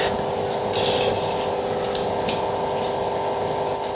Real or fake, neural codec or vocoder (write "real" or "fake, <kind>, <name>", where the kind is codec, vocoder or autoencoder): real